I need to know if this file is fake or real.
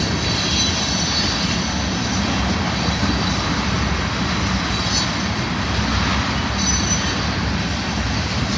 real